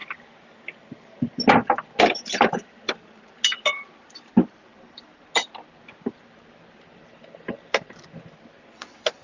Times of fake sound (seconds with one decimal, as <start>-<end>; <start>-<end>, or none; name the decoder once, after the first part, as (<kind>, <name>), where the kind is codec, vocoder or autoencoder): none